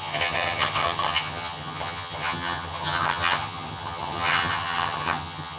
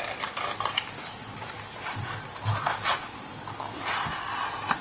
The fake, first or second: first